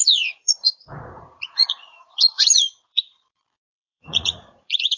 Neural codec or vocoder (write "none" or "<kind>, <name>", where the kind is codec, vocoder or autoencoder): vocoder, Vocos